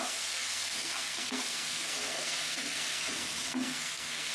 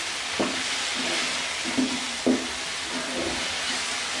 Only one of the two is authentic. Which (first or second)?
second